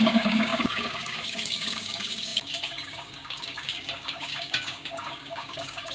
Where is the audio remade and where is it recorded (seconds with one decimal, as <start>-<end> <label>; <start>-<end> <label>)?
0.0-5.9 remade